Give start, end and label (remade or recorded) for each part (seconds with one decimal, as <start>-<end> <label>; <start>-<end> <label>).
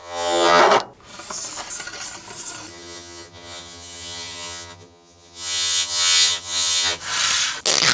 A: 0.0-0.6 remade; 0.6-2.7 recorded; 2.7-7.0 remade; 7.0-7.9 recorded